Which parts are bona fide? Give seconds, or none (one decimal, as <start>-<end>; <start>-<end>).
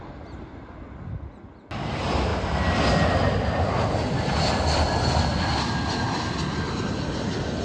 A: 0.0-7.6